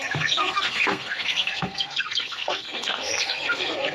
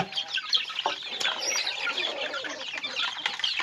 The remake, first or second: first